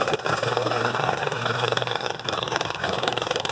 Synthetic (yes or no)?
yes